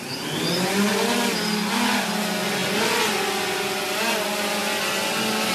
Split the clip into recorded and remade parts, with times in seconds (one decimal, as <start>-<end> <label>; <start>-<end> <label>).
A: 0.0-5.5 recorded